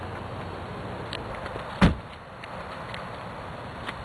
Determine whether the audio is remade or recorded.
recorded